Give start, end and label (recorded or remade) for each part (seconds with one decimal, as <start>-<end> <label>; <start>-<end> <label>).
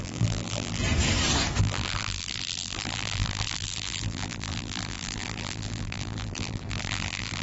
0.0-0.8 remade; 0.8-1.6 recorded; 1.6-7.4 remade